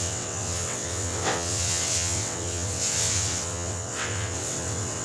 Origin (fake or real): fake